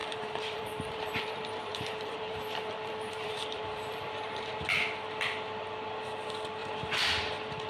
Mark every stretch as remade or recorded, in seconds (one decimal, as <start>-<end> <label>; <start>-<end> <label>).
0.0-4.6 remade; 4.6-6.6 recorded; 6.6-7.3 remade; 7.3-7.7 recorded